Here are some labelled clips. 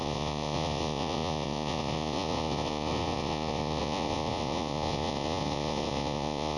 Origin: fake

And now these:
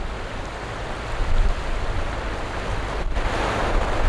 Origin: real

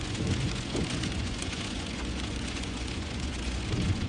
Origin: fake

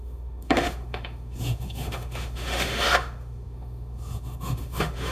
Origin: fake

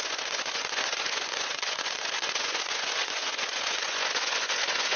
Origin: fake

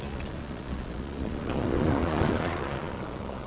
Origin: fake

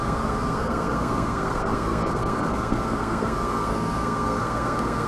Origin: fake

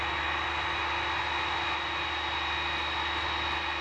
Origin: real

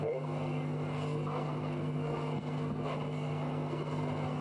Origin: fake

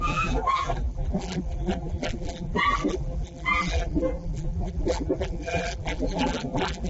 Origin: fake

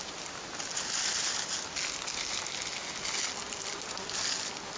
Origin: real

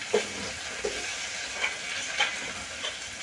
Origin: real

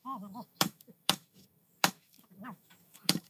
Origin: fake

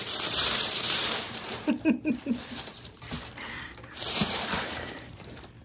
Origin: fake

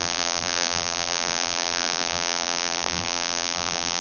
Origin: fake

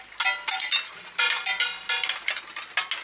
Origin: real